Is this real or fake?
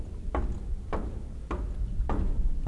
real